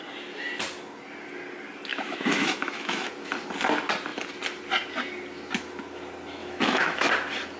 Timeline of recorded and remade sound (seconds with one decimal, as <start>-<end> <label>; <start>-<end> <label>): 0.0-1.9 recorded; 1.9-3.1 remade; 3.1-6.4 recorded; 6.4-7.1 remade; 7.1-7.6 recorded

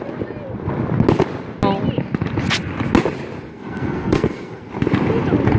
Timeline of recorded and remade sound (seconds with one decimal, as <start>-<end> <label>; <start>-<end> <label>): 0.0-3.5 recorded; 3.5-4.7 remade; 4.7-5.6 recorded

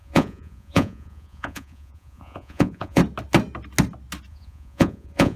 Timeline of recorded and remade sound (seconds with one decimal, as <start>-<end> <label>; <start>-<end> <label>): 0.0-3.0 remade; 3.0-4.3 recorded; 4.3-5.4 remade

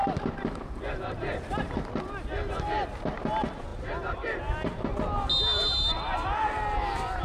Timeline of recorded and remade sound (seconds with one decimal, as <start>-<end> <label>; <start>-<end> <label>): 0.0-7.2 recorded

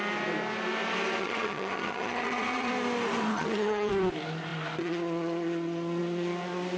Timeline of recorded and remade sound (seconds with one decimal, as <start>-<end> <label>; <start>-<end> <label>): 0.0-1.2 recorded; 1.2-2.7 remade; 2.7-3.3 recorded; 3.3-3.9 remade; 3.9-6.8 recorded

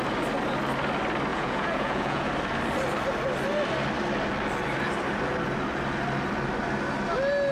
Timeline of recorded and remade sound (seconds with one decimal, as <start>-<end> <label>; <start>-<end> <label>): 0.0-1.3 recorded; 1.3-2.3 remade; 2.3-7.5 recorded